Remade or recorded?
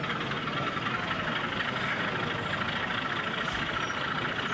recorded